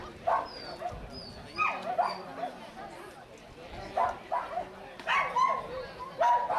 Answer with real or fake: real